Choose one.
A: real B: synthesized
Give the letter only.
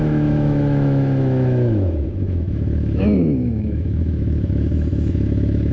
B